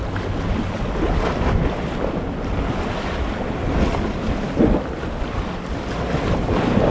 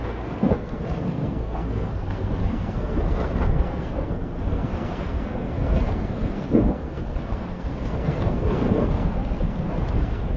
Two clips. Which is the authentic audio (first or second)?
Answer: first